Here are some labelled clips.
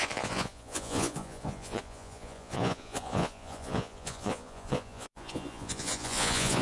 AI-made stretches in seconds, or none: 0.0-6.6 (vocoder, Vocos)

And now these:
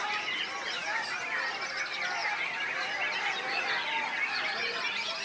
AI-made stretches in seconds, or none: none

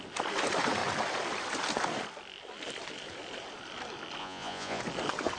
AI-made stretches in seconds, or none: 4.2-4.8 (vocoder, Vocos)